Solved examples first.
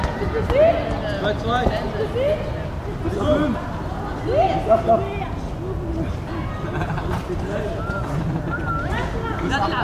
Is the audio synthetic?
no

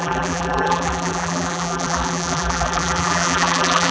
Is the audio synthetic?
yes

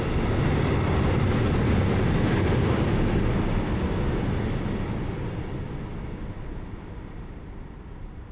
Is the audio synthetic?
no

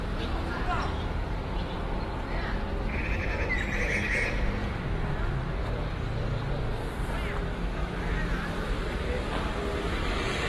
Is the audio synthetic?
no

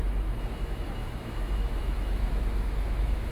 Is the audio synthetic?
yes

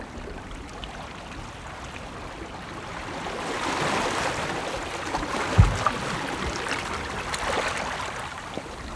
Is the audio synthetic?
no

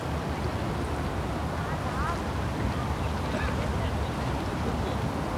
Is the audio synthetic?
no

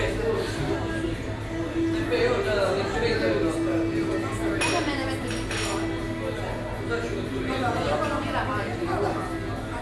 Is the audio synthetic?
no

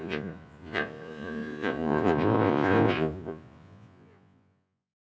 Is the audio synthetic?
yes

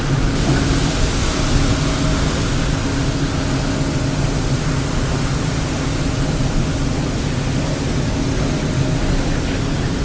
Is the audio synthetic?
no